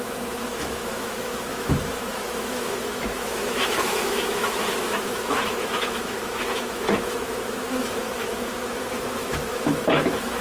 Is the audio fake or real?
fake